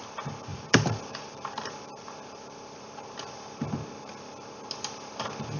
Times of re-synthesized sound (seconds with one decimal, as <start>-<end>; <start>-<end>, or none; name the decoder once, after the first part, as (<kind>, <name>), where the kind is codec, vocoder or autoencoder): 0.5-3.6 (vocoder, BigVGAN v2)